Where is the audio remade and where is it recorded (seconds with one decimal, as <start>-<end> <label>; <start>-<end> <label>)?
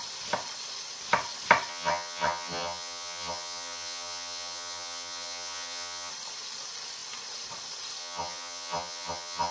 0.0-1.7 recorded; 1.7-6.1 remade; 6.1-8.0 recorded; 8.0-9.5 remade